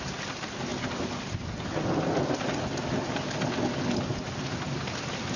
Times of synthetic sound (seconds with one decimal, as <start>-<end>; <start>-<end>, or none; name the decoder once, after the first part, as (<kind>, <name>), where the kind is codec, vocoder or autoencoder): none